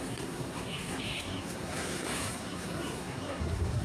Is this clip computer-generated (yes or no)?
yes